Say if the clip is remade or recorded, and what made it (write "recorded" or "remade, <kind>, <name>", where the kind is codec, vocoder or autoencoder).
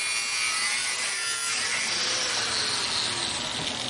recorded